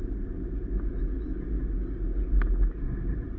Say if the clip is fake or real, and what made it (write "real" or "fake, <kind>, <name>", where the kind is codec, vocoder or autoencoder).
real